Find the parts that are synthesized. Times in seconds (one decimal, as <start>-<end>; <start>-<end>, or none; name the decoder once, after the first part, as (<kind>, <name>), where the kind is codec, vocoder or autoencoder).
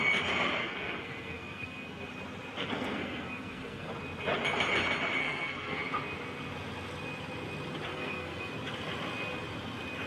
0.6-2.1 (codec, SNAC); 2.6-3.9; 5.2-5.8; 7.9-8.5